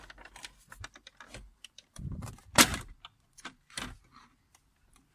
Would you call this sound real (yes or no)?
yes